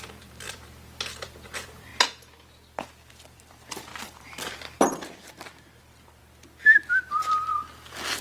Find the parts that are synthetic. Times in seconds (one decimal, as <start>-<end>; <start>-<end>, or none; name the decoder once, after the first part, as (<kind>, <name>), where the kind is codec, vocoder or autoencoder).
0.0-1.9 (vocoder, BigVGAN v2); 3.1-6.2; 7.1-7.5